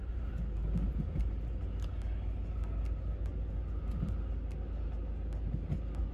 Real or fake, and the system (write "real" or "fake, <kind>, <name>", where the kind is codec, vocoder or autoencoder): real